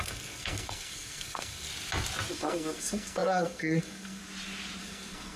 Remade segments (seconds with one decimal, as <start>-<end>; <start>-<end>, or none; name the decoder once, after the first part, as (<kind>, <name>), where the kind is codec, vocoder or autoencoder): 0.0-1.7 (codec, SNAC); 2.3-4.2; 4.8-5.4